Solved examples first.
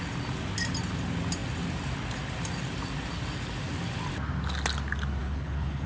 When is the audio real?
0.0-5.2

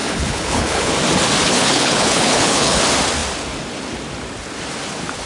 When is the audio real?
0.9-1.4; 2.8-5.3

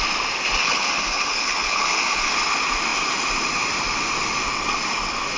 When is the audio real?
0.0-0.6; 2.3-5.4